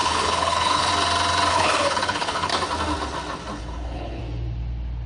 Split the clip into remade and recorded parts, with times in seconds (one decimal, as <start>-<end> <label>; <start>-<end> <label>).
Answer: 0.0-0.9 remade; 0.9-1.5 recorded; 1.5-2.5 remade; 2.5-3.6 recorded; 3.6-4.2 remade; 4.2-5.1 recorded